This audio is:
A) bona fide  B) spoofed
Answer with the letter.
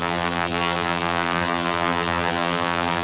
B